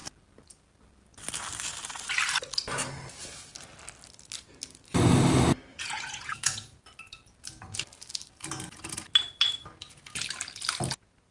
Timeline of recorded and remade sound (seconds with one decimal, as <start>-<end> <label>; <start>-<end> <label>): 0.0-5.7 recorded; 5.7-6.8 remade; 6.8-11.3 recorded